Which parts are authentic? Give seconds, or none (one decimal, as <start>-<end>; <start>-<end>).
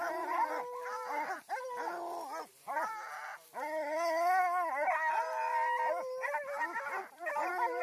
0.0-7.8